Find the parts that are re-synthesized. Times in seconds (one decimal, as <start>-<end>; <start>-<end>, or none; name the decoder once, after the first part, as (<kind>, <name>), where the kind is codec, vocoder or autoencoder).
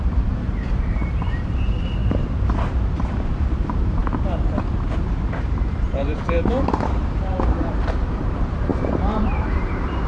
0.0-10.1 (vocoder, BigVGAN v2)